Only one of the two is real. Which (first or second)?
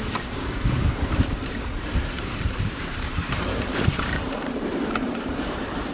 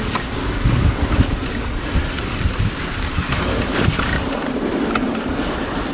second